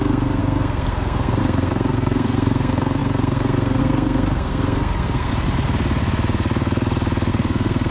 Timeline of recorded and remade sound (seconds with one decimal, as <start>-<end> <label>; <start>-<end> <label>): 0.0-5.3 remade; 5.3-7.3 recorded; 7.3-7.9 remade